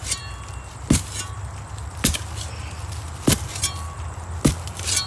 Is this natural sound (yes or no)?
yes